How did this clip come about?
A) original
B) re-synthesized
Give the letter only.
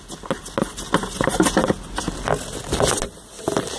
A